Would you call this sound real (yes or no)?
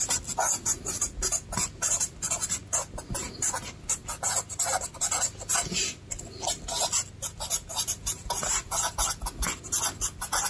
yes